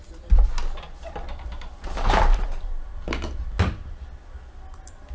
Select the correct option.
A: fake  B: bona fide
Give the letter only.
B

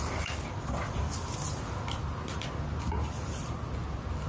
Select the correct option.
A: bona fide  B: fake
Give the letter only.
A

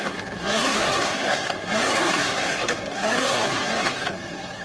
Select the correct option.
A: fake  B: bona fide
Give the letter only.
A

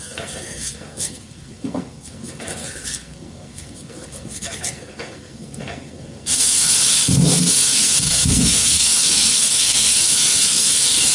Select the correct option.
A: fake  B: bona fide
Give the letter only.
A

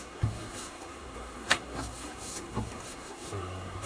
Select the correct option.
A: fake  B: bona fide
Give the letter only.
A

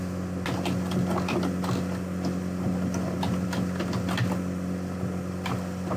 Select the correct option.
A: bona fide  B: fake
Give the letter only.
A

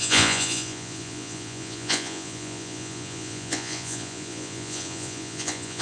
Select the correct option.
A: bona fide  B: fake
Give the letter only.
B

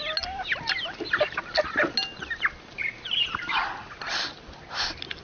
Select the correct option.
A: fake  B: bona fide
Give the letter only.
B